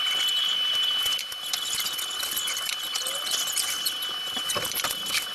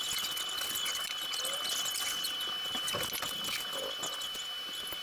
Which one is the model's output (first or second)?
first